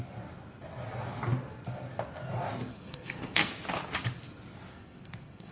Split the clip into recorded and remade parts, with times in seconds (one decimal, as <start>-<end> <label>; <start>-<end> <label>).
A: 0.0-2.7 recorded; 2.7-3.5 remade; 3.5-4.7 recorded; 4.7-5.5 remade